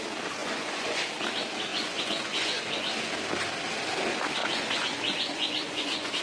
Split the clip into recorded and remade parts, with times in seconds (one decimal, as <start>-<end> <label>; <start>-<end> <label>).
0.0-0.4 recorded; 0.4-1.0 remade; 1.0-1.7 recorded; 1.7-3.1 remade; 3.1-4.4 recorded; 4.4-6.2 remade